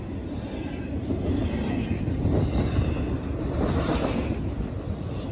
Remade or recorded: recorded